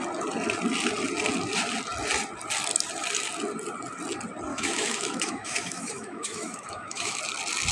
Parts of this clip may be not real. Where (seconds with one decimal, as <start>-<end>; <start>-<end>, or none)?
4.5-7.2